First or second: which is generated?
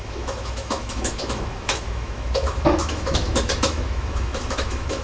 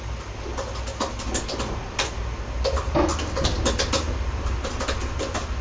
first